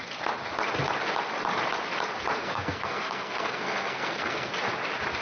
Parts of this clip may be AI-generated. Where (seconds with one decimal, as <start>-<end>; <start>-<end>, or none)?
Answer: 2.4-4.5